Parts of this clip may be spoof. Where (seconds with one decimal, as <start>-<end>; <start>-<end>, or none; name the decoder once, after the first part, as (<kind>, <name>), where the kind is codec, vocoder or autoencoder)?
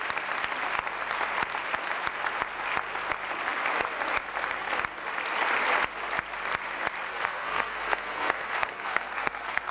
7.1-9.7 (codec, SNAC)